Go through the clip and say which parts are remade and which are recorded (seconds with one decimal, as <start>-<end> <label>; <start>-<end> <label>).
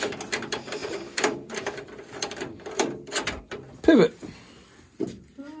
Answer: 0.0-0.8 recorded; 0.8-3.4 remade; 3.4-5.6 recorded